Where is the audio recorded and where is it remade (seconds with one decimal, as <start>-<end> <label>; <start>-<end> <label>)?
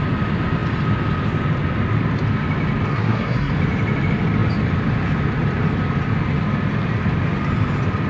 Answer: 0.0-2.9 recorded; 2.9-3.5 remade; 3.5-8.1 recorded